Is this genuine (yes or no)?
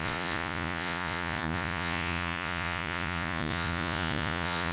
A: no